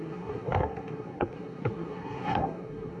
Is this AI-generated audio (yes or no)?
yes